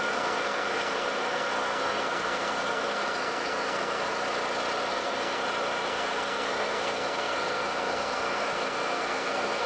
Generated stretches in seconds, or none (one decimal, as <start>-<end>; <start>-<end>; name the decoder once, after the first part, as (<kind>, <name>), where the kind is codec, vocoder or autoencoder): 0.0-4.1 (codec, SNAC); 4.9-5.4; 5.9-9.7